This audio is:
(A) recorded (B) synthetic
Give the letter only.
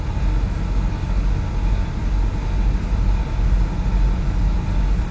A